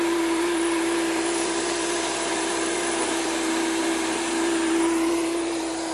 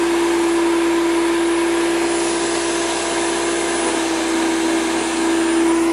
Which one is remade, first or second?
first